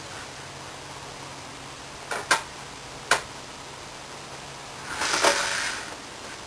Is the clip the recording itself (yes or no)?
yes